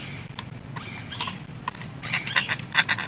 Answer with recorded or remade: recorded